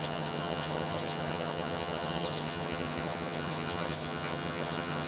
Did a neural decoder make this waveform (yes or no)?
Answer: yes